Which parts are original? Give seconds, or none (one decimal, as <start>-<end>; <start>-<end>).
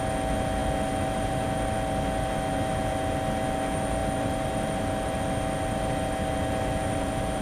0.0-7.4